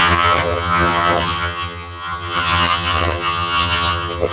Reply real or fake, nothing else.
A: fake